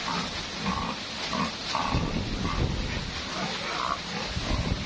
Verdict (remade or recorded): recorded